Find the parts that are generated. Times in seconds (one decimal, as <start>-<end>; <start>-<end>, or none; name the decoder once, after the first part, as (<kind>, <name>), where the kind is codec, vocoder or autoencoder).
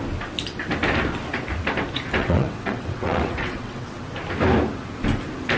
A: 2.2-4.0 (vocoder, WaveNeXt)